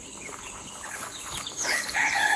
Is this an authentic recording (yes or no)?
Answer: no